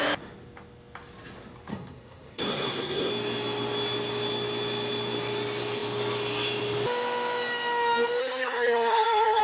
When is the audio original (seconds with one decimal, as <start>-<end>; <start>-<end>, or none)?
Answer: 0.0-1.7; 3.1-8.2